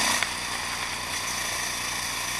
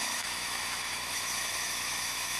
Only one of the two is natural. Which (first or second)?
first